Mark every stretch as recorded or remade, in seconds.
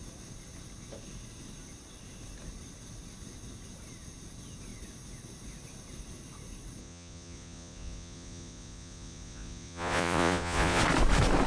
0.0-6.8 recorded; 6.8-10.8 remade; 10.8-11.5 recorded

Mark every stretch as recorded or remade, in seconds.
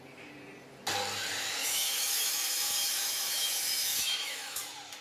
0.0-1.6 recorded; 1.6-4.6 remade; 4.6-5.0 recorded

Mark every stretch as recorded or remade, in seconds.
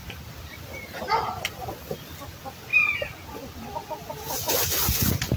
0.0-5.4 recorded